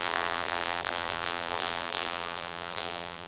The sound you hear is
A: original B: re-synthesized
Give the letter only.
B